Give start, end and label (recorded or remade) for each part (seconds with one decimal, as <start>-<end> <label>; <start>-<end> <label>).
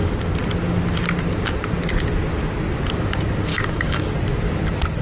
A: 0.0-3.5 recorded; 3.5-4.1 remade; 4.1-5.0 recorded